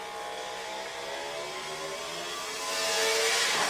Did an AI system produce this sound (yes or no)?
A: no